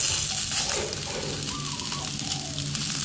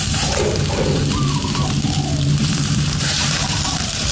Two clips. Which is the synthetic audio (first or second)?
second